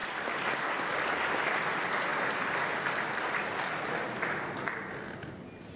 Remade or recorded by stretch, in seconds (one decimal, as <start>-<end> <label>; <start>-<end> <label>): 0.0-5.8 recorded

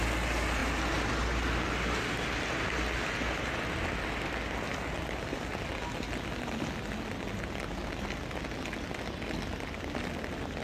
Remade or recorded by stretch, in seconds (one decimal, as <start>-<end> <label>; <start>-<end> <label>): 0.0-10.6 recorded

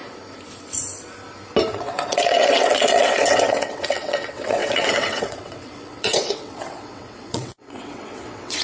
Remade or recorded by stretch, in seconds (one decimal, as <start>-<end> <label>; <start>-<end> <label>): 0.0-1.7 recorded; 1.7-8.6 remade

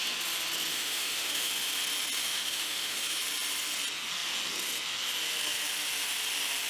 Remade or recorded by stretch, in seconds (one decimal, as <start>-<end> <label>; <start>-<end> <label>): 0.0-0.7 recorded; 0.7-1.5 remade; 1.5-2.2 recorded; 2.2-3.2 remade; 3.2-6.7 recorded

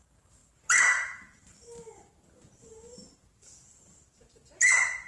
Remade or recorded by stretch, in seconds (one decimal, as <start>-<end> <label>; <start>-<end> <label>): 0.0-5.1 remade